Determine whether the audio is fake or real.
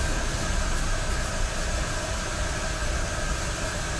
real